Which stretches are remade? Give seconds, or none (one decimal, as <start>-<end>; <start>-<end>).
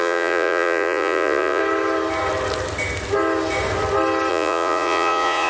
0.0-1.6; 4.3-5.5